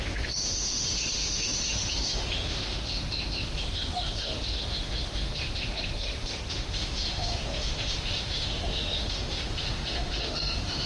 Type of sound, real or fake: fake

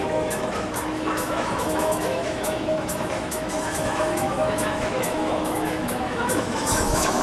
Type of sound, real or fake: fake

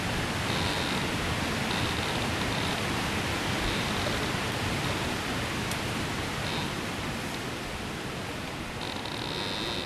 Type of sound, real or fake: real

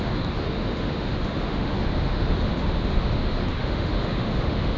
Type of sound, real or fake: fake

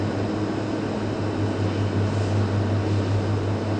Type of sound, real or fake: real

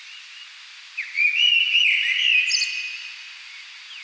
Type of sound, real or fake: real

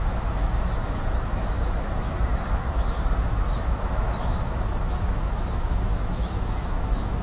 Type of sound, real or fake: fake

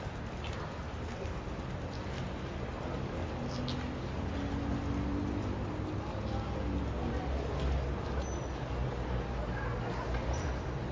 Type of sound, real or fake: real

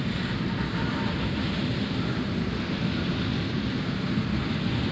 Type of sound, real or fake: real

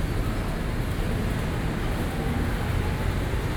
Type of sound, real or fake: real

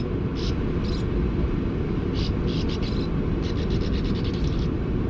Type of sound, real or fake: real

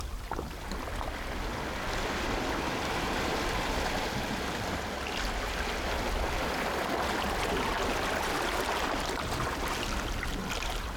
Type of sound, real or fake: real